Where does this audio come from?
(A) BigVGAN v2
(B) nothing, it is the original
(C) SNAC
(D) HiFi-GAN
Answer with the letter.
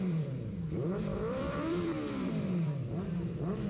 A